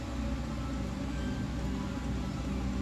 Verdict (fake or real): real